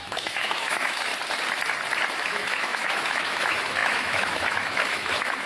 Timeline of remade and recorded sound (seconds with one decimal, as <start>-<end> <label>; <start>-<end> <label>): 0.0-1.1 remade; 1.1-2.1 recorded; 2.1-5.5 remade